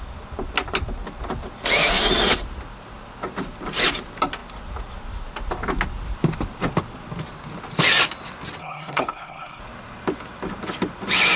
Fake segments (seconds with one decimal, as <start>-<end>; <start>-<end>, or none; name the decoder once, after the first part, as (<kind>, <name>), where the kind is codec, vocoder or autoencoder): 8.6-9.6 (codec, SNAC)